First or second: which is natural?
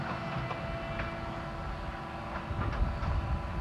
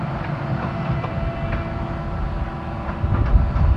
first